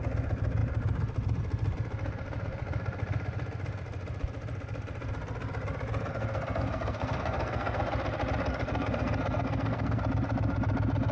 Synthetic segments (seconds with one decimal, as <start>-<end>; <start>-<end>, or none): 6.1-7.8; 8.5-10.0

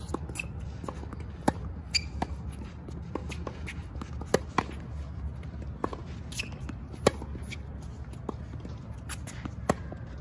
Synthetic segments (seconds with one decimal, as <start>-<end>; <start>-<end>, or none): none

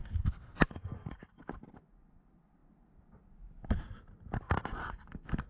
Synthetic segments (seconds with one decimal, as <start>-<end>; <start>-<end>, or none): 0.0-0.6